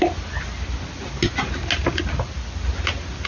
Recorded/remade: recorded